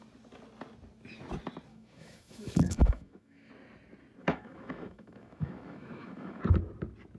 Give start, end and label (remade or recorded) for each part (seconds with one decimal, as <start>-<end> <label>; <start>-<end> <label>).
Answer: 0.0-1.7 recorded; 1.7-3.5 remade; 3.5-4.2 recorded; 4.2-6.4 remade; 6.4-7.2 recorded